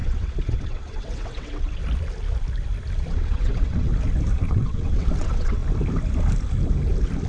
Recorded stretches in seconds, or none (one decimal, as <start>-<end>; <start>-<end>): 1.8-3.1; 3.9-4.5; 5.6-7.3